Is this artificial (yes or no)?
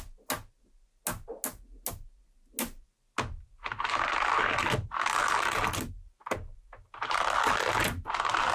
no